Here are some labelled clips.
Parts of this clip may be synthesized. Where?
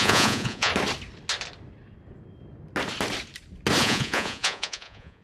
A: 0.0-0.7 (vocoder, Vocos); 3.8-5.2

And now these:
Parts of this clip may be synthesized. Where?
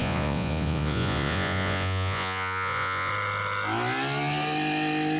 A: 0.0-3.1 (vocoder, Vocos)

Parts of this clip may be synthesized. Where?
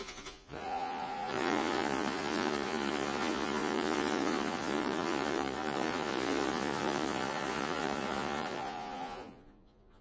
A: 0.0-10.0 (vocoder, Vocos)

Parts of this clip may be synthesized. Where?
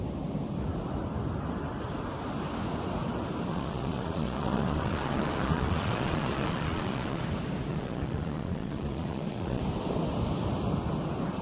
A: 3.5-7.2 (vocoder, Vocos); 7.7-9.6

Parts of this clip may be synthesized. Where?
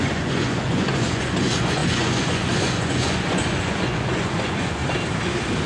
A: 0.0-4.8 (vocoder, Vocos)